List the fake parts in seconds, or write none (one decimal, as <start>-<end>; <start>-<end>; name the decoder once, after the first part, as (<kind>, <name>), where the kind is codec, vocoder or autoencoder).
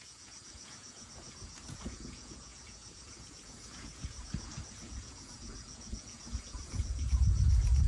0.0-7.9 (vocoder, Vocos)